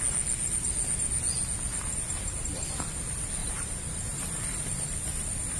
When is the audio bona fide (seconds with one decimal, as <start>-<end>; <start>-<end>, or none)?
0.0-3.4